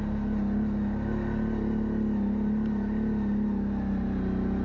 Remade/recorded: recorded